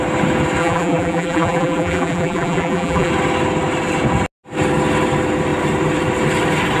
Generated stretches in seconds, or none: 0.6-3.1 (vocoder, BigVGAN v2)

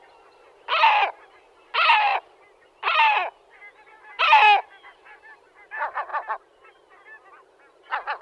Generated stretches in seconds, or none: 6.1-6.8 (vocoder, BigVGAN v2)

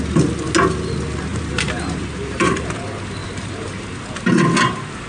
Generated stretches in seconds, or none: 1.3-2.6 (vocoder, BigVGAN v2); 3.2-4.0

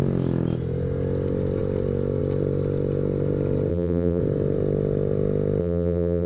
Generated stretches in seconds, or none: 3.7-4.2 (vocoder, BigVGAN v2); 5.6-6.3

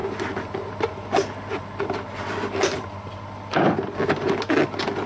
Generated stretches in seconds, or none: none